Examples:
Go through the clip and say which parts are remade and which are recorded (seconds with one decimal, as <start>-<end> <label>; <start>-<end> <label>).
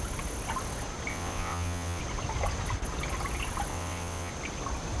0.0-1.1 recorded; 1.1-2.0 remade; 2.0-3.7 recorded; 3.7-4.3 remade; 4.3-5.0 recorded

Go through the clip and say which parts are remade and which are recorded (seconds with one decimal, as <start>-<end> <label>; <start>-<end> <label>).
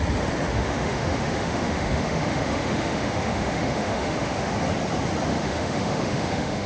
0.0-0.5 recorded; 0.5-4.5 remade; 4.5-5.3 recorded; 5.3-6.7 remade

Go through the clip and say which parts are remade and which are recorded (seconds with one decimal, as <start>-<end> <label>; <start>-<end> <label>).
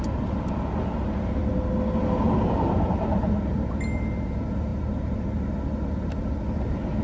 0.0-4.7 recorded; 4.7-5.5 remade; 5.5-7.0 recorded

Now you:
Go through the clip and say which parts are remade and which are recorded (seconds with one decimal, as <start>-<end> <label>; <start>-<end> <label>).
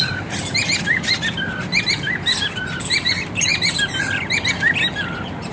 0.0-5.5 recorded